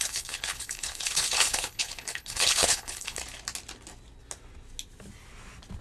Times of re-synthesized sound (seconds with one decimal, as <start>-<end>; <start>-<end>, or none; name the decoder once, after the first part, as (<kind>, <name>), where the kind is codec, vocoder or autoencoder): 0.0-3.2 (codec, HILCodec)